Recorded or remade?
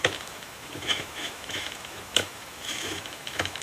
remade